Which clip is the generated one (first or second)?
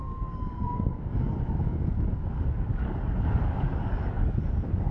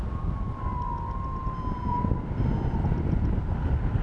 first